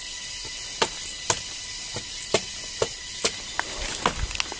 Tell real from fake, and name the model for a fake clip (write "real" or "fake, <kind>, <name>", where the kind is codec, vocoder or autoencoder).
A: real